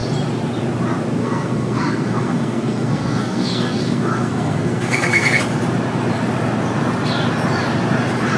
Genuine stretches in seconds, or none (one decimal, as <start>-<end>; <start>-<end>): 0.0-1.2; 5.4-8.4